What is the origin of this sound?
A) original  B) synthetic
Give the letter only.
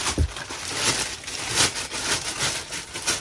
A